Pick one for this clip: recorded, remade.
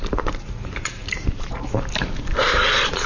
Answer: remade